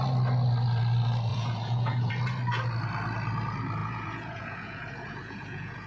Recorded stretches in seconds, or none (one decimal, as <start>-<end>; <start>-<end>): 0.0-1.3; 2.1-3.8